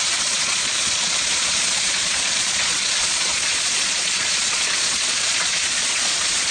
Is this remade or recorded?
remade